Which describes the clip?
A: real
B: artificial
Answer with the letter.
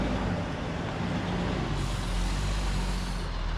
A